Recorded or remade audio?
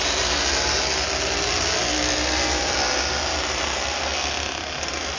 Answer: recorded